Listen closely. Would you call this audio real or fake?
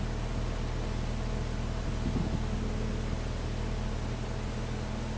real